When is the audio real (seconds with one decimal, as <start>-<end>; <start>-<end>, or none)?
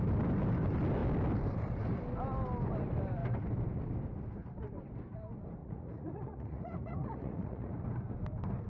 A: 0.0-5.6; 7.7-8.7